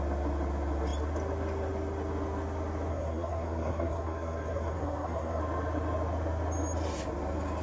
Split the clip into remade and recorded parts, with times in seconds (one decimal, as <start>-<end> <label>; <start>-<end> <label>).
0.0-2.9 recorded; 2.9-5.4 remade; 5.4-7.6 recorded